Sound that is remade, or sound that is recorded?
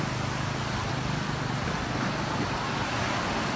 recorded